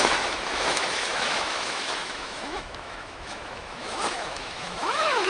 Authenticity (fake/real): fake